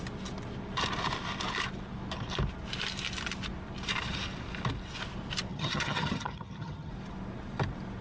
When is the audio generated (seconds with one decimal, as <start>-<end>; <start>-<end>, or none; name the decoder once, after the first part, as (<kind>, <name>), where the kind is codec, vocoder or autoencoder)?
5.5-6.9 (vocoder, HiFi-GAN)